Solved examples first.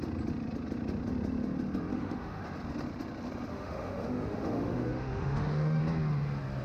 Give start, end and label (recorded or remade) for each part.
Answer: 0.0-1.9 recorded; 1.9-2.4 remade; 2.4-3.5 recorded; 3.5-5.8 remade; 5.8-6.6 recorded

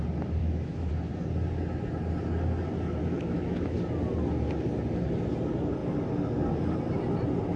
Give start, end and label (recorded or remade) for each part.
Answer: 0.0-0.4 recorded; 0.4-0.9 remade; 0.9-3.0 recorded; 3.0-3.8 remade; 3.8-7.6 recorded

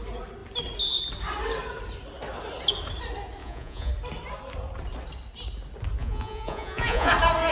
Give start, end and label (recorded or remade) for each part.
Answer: 0.0-3.4 recorded; 3.4-3.9 remade; 3.9-6.0 recorded; 6.0-7.1 remade; 7.1-7.5 recorded

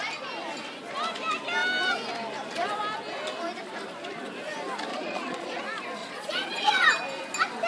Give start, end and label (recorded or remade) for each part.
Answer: 0.0-4.9 recorded; 4.9-5.6 remade; 5.6-6.0 recorded; 6.0-6.9 remade; 6.9-7.7 recorded

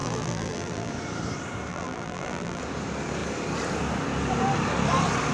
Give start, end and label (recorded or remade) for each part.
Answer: 0.0-0.9 remade; 0.9-1.7 recorded; 1.7-2.6 remade; 2.6-5.3 recorded

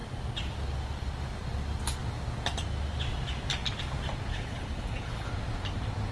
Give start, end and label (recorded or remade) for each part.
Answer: 0.0-4.3 recorded; 4.3-5.3 remade; 5.3-6.1 recorded

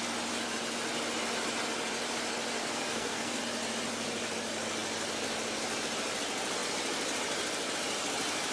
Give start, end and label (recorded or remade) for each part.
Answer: 0.0-2.6 recorded; 2.6-3.4 remade; 3.4-8.5 recorded